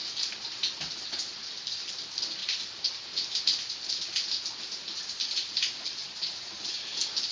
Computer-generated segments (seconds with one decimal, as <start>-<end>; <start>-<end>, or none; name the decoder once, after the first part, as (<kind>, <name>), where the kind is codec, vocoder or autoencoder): 6.0-6.7 (vocoder, Vocos)